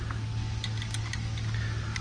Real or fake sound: real